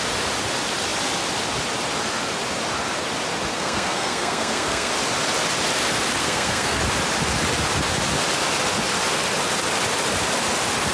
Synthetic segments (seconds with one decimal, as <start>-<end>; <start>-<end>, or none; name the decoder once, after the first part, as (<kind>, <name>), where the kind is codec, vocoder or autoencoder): 3.5-4.9 (codec, SNAC); 6.2-6.8